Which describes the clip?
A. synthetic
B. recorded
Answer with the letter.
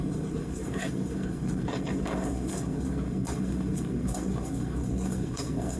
A